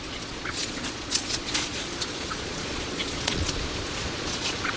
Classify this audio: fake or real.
fake